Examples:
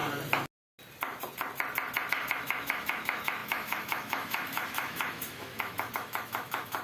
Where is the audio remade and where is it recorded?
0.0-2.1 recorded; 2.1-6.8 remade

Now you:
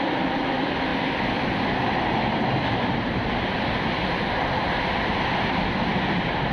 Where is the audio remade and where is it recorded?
0.0-6.5 recorded

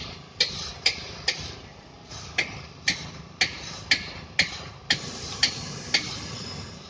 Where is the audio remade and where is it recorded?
0.0-6.9 recorded

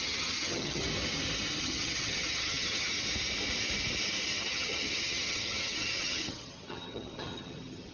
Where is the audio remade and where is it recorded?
0.0-0.8 remade; 0.8-1.6 recorded; 1.6-2.9 remade; 2.9-4.4 recorded; 4.4-7.9 remade

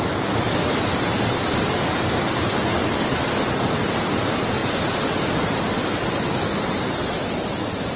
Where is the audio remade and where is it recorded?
0.0-8.0 remade